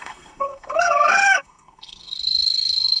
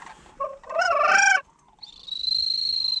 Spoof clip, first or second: first